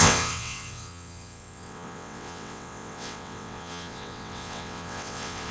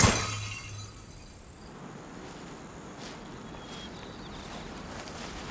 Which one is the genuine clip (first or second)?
second